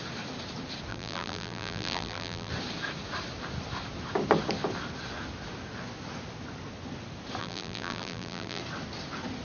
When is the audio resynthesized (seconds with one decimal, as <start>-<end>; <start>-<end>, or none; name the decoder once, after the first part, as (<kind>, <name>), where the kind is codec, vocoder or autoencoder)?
0.9-2.5 (vocoder, BigVGAN v2); 7.4-8.6